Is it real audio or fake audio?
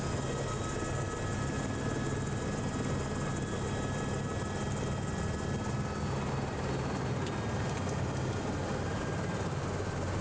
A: real